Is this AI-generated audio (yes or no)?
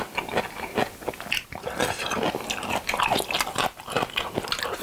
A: no